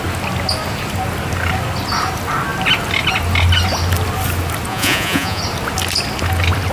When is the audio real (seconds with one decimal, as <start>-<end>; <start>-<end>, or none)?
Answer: 0.0-4.7; 5.4-6.7